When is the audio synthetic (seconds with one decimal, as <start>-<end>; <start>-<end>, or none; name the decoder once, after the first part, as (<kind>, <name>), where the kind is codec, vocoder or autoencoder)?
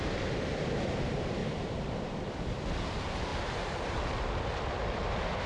1.4-2.3 (vocoder, BigVGAN v2); 3.3-4.0